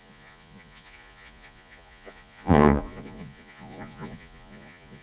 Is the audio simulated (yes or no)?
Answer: yes